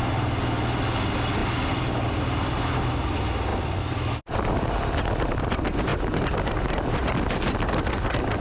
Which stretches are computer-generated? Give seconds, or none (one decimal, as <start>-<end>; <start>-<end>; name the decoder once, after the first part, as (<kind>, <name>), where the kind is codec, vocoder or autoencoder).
none